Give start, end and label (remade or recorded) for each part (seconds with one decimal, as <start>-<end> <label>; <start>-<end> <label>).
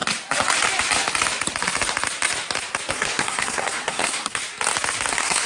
0.0-2.9 recorded; 2.9-4.4 remade; 4.4-5.1 recorded; 5.1-5.5 remade